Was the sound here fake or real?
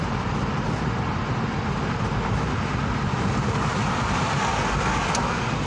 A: real